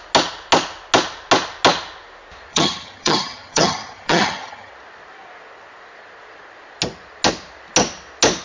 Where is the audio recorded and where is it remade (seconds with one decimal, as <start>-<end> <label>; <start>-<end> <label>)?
0.0-2.5 recorded; 2.5-4.7 remade; 4.7-8.4 recorded